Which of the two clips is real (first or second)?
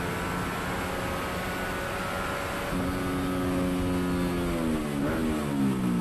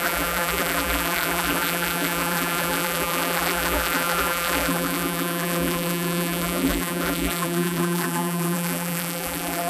first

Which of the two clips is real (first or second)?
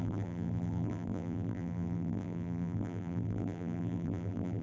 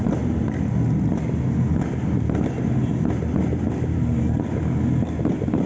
second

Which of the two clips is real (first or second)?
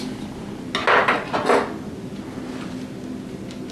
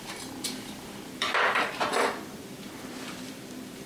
first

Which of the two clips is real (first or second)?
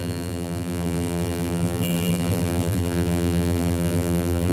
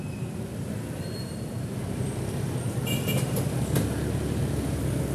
second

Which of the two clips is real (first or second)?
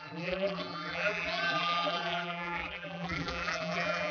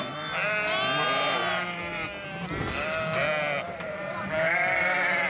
second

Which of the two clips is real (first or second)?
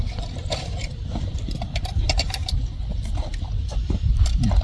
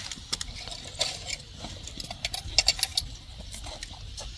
second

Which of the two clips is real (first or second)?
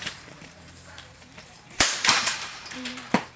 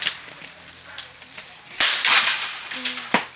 second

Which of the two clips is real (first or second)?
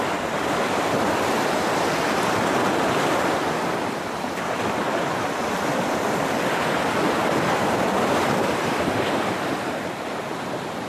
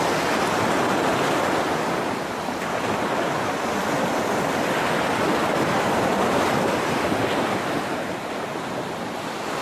second